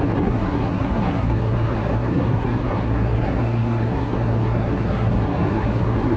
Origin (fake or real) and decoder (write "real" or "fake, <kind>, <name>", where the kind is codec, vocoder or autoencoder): fake, codec, SNAC